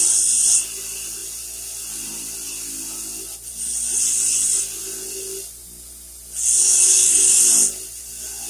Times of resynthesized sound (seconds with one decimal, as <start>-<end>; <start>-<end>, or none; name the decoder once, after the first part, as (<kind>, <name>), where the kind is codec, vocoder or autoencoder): 6.6-7.4 (codec, DAC)